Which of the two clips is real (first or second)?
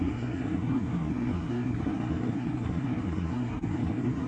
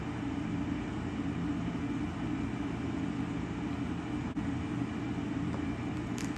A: second